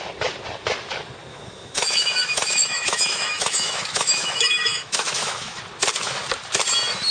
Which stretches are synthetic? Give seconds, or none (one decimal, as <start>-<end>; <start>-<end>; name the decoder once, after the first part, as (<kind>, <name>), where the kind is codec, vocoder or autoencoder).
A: 1.3-5.6 (autoencoder, DAC-VAE)